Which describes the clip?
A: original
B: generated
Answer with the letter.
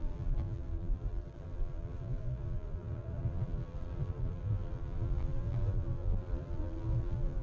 B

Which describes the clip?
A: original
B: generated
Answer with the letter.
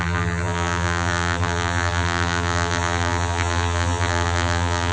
B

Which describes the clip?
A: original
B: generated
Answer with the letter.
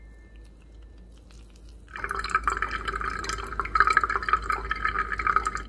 A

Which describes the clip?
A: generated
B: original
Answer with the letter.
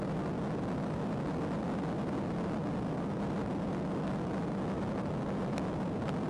B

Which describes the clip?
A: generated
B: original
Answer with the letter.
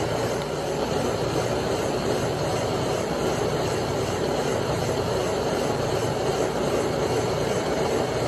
A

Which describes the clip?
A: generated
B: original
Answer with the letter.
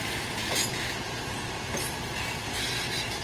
B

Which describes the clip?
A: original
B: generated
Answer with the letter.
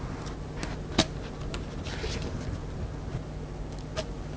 A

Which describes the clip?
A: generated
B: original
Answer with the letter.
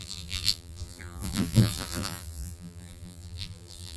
A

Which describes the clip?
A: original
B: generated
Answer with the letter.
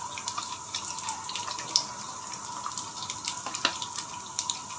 A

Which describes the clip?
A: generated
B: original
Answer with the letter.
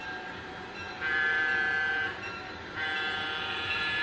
A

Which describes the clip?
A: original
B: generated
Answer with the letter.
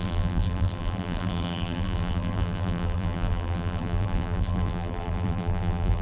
B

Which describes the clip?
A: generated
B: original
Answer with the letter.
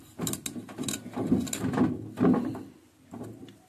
B